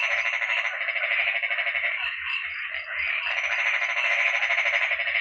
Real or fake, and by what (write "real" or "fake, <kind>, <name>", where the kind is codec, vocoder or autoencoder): real